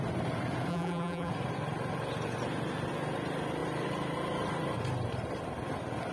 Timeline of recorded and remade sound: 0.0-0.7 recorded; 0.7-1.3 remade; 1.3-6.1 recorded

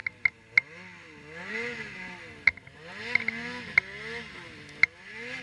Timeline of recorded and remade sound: 0.0-5.4 recorded